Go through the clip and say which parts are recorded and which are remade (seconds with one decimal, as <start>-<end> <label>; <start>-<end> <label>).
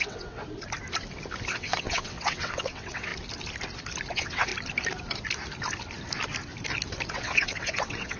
0.0-0.4 remade; 0.4-1.5 recorded; 1.5-3.1 remade; 3.1-4.1 recorded; 4.1-4.5 remade; 4.5-7.1 recorded; 7.1-8.2 remade